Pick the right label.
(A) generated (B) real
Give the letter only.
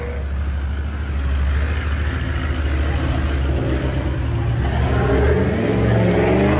B